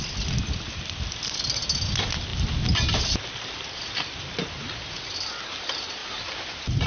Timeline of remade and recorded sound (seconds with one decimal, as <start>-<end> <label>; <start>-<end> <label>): 0.0-6.0 recorded; 6.0-6.9 remade

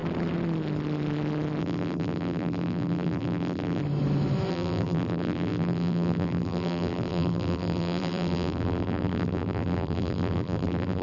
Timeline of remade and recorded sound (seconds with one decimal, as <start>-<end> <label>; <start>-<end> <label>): 0.0-1.6 recorded; 1.6-3.8 remade; 3.8-4.5 recorded; 4.5-11.0 remade

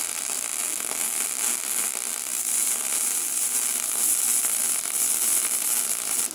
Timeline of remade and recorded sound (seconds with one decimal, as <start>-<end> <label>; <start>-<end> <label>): 0.0-0.5 remade; 0.5-1.0 recorded; 1.0-6.3 remade

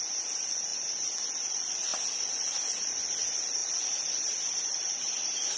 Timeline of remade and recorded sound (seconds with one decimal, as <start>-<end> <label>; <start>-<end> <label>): 0.0-0.7 recorded; 0.7-1.4 remade; 1.4-3.6 recorded; 3.6-5.6 remade

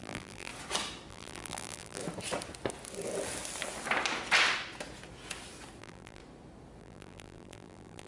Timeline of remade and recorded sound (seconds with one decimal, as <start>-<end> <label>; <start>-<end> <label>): 0.0-0.5 remade; 0.5-1.1 recorded; 1.1-2.0 remade; 2.0-5.8 recorded; 5.8-6.2 remade; 6.2-6.8 recorded; 6.8-8.1 remade